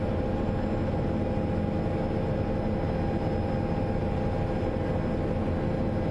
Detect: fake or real real